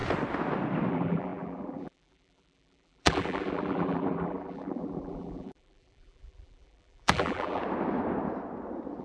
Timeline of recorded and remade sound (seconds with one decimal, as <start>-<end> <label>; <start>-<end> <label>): 0.0-0.9 recorded; 0.9-7.6 remade; 7.6-9.0 recorded